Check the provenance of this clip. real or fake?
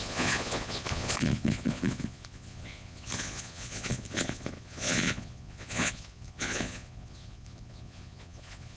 fake